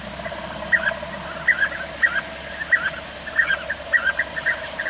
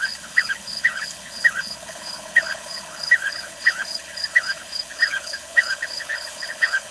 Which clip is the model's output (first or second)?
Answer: second